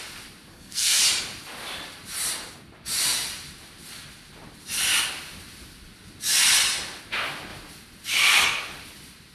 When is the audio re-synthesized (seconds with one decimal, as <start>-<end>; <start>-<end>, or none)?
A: 0.5-1.0